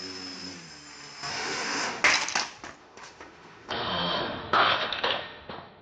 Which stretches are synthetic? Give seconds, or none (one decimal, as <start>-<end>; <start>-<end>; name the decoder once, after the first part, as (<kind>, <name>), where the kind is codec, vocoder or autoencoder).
1.3-2.0 (autoencoder, DAC-VAE); 2.8-5.8